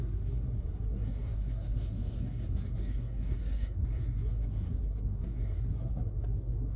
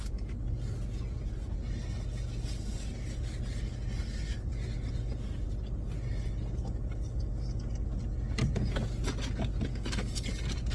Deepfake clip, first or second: first